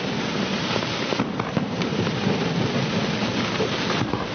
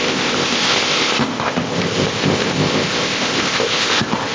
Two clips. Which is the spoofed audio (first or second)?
second